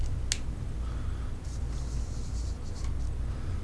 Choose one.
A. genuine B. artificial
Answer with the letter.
A